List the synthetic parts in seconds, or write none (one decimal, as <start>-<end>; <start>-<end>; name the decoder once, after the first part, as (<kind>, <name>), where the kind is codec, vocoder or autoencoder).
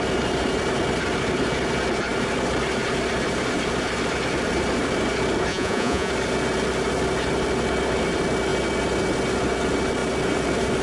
5.5-6.1 (vocoder, Vocos)